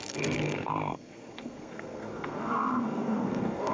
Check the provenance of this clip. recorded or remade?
remade